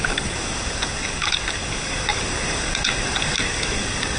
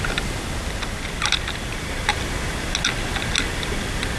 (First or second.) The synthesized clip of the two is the first